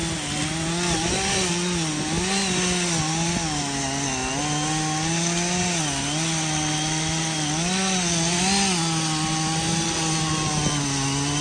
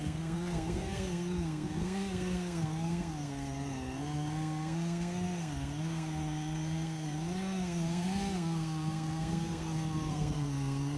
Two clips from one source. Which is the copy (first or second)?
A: second